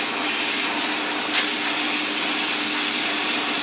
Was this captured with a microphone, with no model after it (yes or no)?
yes